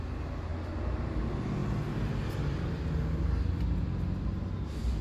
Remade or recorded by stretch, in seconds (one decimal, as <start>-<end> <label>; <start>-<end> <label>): 0.0-5.0 recorded